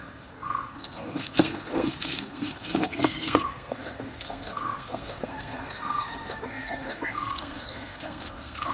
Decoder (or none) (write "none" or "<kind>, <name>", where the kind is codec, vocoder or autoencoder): codec, SNAC